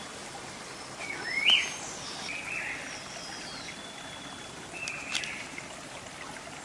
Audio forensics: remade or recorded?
recorded